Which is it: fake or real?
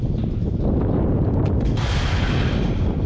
real